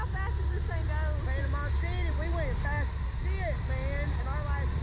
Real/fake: real